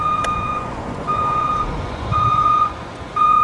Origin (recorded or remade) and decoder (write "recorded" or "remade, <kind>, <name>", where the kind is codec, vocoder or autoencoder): remade, vocoder, Vocos